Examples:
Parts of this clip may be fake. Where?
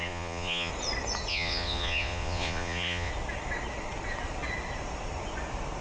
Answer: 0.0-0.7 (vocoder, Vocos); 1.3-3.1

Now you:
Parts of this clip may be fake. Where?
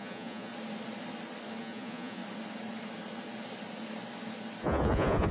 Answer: 0.0-0.5 (vocoder, Vocos); 1.6-2.2; 4.6-5.3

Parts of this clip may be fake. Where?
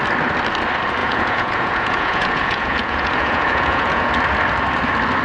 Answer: 1.0-4.1 (vocoder, Vocos)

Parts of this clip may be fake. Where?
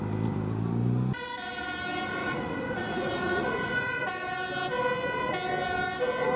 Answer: 2.2-4.1 (vocoder, Vocos)